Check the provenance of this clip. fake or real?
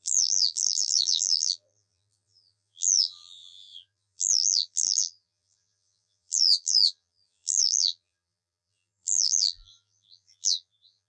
fake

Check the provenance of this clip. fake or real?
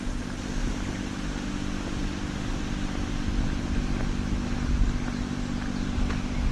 real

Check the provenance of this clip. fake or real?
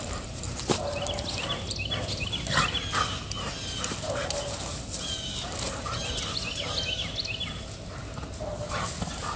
real